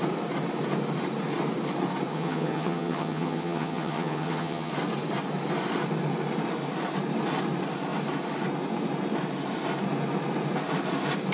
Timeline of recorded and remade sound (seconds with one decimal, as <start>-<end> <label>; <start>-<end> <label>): 0.0-2.1 recorded; 2.1-4.7 remade; 4.7-11.3 recorded